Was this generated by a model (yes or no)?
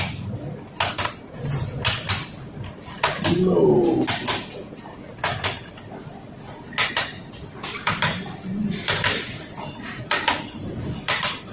no